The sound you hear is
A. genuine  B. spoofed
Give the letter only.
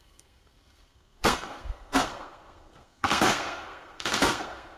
B